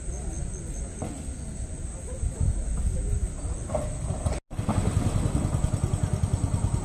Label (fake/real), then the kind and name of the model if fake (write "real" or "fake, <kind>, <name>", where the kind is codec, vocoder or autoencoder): real